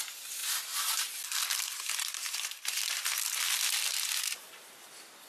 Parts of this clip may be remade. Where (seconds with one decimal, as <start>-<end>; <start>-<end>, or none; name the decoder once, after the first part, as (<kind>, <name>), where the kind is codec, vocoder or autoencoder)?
none